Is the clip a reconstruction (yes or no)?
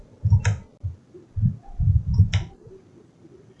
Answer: no